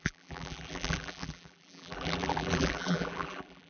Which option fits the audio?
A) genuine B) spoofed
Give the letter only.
B